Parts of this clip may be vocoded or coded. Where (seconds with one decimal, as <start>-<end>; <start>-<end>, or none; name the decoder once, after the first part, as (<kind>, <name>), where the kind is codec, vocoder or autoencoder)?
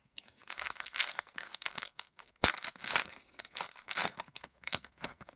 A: 0.0-5.4 (codec, SNAC)